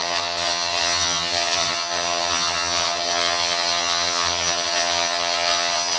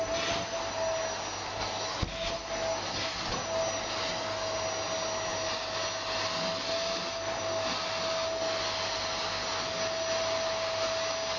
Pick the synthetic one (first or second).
first